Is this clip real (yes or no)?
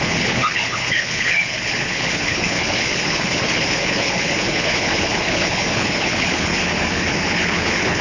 no